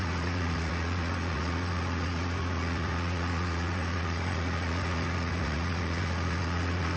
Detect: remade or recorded remade